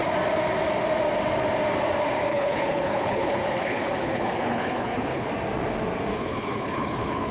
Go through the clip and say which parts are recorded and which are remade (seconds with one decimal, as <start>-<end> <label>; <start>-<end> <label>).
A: 0.0-2.3 recorded; 2.3-5.3 remade; 5.3-6.1 recorded; 6.1-7.3 remade